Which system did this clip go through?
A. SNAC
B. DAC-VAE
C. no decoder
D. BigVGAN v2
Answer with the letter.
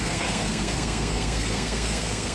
A